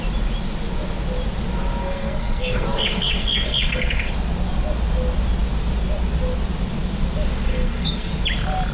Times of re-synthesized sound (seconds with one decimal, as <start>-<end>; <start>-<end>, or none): 1.8-4.1; 7.5-8.1